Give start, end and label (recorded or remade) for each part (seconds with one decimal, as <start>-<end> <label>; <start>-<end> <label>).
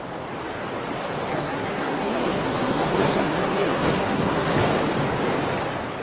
0.0-1.3 recorded; 1.3-4.6 remade; 4.6-6.0 recorded